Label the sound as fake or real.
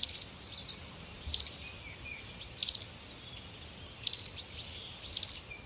real